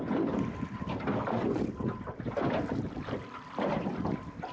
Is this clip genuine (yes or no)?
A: yes